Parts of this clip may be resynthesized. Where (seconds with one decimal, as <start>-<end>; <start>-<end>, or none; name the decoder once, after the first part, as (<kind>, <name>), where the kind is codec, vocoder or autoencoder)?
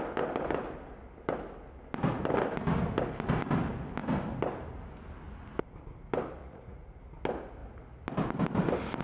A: 6.4-7.0 (vocoder, Vocos)